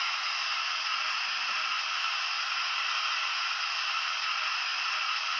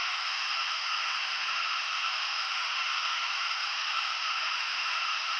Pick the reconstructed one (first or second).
second